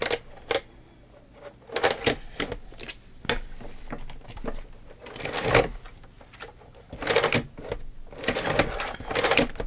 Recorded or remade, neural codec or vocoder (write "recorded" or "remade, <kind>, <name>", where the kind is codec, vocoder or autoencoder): recorded